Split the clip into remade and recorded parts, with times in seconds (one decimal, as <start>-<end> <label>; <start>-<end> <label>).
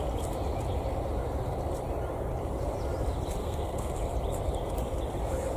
0.0-3.4 recorded; 3.4-3.9 remade; 3.9-5.6 recorded